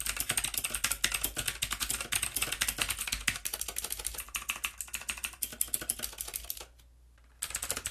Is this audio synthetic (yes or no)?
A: no